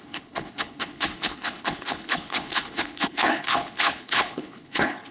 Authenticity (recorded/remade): remade